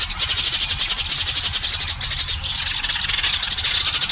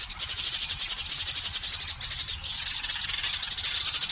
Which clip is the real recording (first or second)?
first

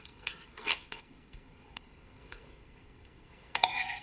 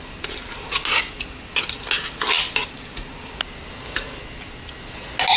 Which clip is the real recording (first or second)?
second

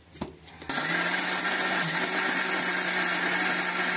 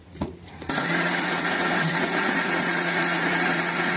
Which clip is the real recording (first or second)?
first